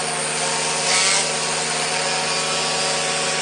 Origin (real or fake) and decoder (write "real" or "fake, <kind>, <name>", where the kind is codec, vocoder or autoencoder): real